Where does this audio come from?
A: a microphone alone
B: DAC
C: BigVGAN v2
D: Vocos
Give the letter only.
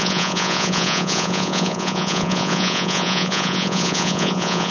D